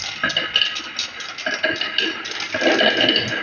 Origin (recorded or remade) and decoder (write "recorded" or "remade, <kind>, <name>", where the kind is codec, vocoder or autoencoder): recorded